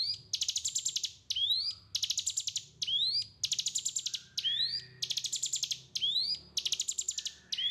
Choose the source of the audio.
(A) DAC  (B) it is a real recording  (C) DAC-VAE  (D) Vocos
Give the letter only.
B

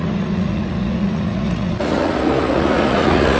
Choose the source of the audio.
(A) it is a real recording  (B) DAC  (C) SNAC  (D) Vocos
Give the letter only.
D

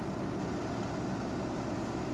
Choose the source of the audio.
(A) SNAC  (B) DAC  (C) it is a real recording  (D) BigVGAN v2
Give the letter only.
C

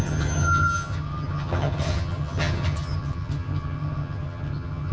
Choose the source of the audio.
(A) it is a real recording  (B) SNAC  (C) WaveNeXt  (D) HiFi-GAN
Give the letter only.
D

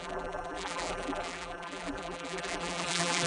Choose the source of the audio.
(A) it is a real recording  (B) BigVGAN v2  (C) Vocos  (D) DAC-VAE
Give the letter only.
B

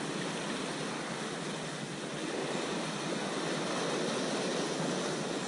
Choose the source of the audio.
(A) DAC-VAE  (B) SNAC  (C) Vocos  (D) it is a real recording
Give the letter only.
D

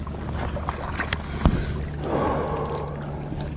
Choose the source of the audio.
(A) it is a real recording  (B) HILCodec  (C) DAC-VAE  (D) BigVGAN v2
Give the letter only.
A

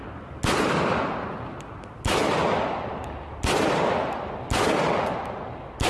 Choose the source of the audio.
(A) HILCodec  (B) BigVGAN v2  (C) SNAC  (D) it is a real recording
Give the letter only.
D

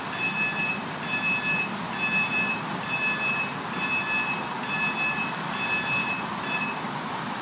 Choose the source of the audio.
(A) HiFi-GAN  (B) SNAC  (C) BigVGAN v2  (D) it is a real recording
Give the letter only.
D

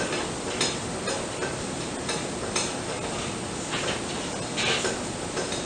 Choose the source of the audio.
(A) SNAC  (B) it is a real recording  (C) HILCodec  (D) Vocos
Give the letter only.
B